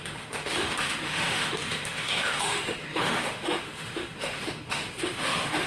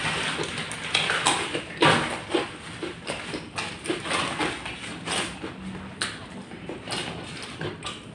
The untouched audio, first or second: second